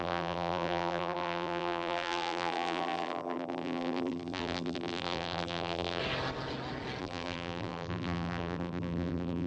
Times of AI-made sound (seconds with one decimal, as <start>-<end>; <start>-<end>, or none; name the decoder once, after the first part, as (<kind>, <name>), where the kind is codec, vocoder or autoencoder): 0.0-6.0 (vocoder, BigVGAN v2); 7.0-9.5